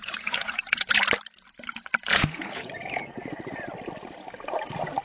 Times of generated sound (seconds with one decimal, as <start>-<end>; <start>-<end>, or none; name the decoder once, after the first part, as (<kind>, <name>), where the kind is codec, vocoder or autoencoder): 0.0-0.9 (vocoder, Vocos); 2.1-3.1